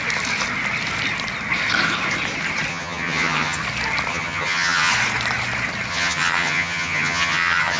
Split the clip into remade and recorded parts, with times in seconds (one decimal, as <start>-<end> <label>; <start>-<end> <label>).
0.0-2.7 recorded; 2.7-3.6 remade; 3.6-4.1 recorded; 4.1-4.9 remade; 4.9-5.9 recorded; 5.9-7.8 remade